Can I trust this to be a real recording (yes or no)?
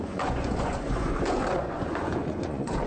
no